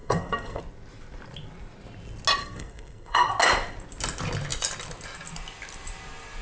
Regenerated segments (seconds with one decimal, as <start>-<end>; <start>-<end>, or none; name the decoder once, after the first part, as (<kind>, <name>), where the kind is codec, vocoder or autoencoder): 0.0-0.6 (codec, SNAC); 2.4-3.3